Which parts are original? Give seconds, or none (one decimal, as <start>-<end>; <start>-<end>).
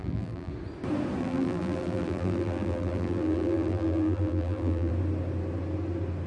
0.5-1.2; 4.9-6.3